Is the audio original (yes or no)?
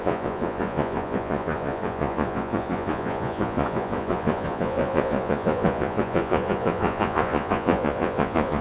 no